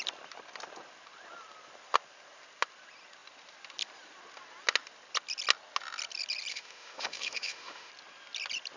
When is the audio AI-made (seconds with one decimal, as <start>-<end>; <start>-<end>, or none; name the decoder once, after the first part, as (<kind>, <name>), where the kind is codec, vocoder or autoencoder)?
6.5-7.9 (autoencoder, DAC-VAE)